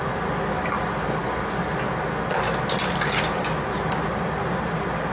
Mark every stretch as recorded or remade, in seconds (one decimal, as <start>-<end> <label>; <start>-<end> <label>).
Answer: 0.0-5.1 recorded